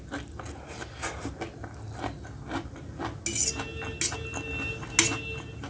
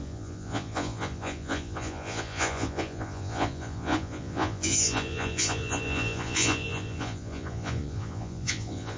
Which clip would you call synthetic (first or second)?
second